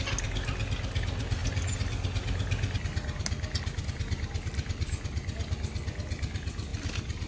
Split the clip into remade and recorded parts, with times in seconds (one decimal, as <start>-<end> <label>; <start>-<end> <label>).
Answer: 0.0-7.3 recorded